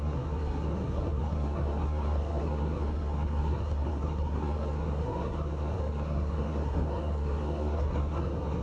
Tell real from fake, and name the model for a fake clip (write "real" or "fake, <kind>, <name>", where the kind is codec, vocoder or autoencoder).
fake, codec, SNAC